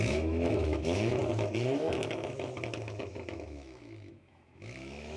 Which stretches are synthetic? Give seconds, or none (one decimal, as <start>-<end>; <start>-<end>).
0.0-5.2